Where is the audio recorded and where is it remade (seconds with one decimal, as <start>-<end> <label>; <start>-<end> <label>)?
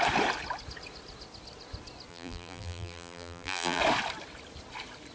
0.0-2.1 recorded; 2.1-3.8 remade; 3.8-5.1 recorded